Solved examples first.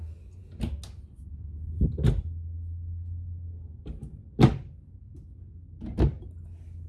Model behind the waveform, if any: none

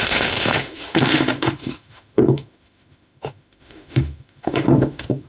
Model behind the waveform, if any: autoencoder, DAC-VAE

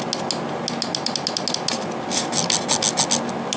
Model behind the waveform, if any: none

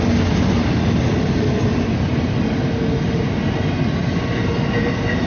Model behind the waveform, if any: none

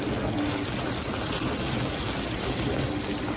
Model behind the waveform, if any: none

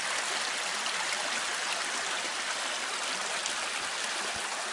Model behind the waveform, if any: none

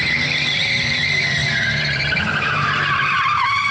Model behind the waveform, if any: vocoder, BigVGAN v2